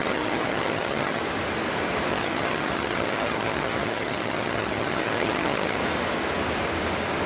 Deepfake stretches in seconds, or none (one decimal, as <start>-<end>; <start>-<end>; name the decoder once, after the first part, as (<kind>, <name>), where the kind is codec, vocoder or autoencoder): 0.0-1.2 (vocoder, HiFi-GAN); 2.1-5.8